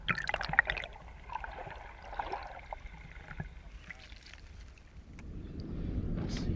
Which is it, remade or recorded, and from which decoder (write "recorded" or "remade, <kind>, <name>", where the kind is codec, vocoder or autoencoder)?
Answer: recorded